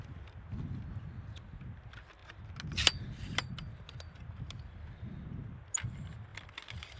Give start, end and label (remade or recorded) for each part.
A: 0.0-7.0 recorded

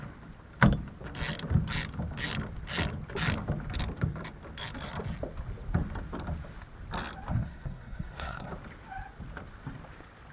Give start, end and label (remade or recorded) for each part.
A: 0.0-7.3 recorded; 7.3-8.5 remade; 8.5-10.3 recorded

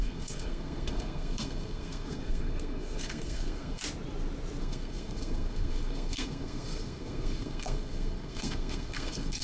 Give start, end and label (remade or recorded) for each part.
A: 0.0-3.8 remade; 3.8-4.6 recorded; 4.6-9.4 remade

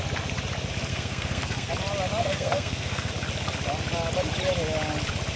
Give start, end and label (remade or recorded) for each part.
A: 0.0-0.9 recorded; 0.9-1.7 remade; 1.7-2.2 recorded; 2.2-3.1 remade; 3.1-5.4 recorded

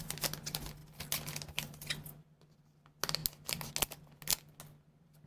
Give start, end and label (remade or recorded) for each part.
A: 0.0-5.3 recorded